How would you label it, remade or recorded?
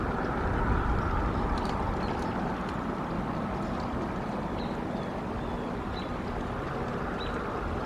recorded